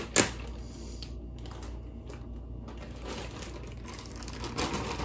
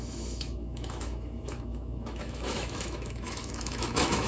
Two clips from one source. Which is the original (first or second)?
first